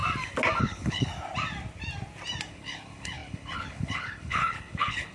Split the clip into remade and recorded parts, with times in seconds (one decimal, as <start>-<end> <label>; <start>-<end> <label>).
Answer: 0.0-0.6 recorded; 0.6-1.1 remade; 1.1-2.5 recorded; 2.5-5.1 remade

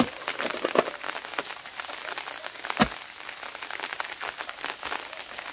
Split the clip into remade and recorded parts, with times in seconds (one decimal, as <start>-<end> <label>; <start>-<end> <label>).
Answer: 0.0-5.5 recorded

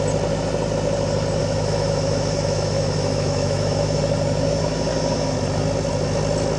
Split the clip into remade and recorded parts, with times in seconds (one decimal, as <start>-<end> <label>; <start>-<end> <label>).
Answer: 0.0-1.4 recorded; 1.4-4.0 remade; 4.0-6.6 recorded

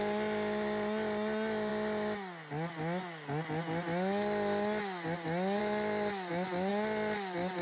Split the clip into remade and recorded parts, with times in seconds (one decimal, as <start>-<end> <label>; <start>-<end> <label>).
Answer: 0.0-7.6 recorded

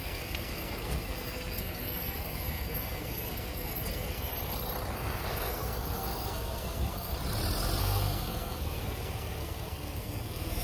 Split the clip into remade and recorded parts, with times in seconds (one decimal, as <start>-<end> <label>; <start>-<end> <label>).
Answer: 0.0-4.3 remade; 4.3-4.9 recorded; 4.9-7.1 remade; 7.1-7.8 recorded; 7.8-10.6 remade

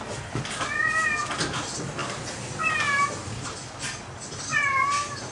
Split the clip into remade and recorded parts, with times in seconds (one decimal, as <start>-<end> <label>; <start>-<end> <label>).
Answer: 0.0-5.3 recorded

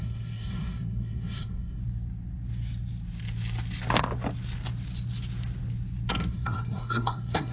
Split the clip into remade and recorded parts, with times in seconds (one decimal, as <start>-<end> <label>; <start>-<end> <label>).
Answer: 0.0-1.8 remade; 1.8-6.1 recorded; 6.1-7.5 remade